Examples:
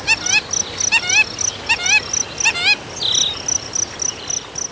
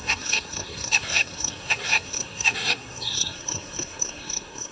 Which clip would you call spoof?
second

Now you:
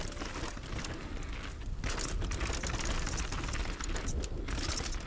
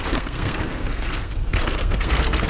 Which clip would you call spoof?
second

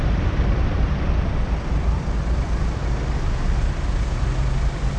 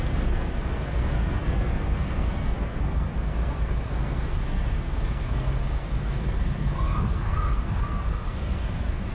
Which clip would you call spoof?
second